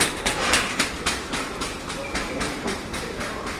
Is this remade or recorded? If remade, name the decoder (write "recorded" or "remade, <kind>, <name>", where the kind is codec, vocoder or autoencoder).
remade, vocoder, BigVGAN v2